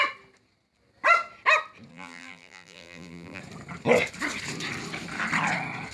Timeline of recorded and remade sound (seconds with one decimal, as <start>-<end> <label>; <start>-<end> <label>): 0.0-1.9 recorded; 1.9-3.4 remade; 3.4-5.9 recorded